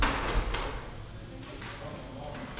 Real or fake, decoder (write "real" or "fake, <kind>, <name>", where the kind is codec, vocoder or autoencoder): real